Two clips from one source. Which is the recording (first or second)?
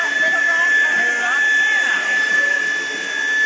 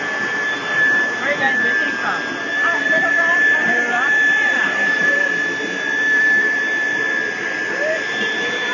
first